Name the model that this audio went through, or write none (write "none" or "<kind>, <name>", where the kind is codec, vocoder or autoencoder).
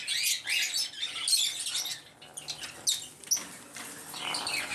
none